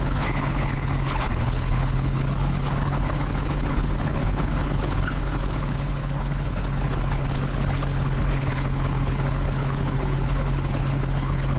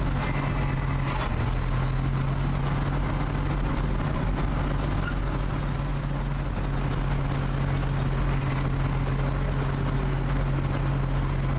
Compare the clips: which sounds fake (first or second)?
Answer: first